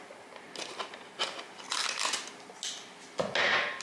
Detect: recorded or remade recorded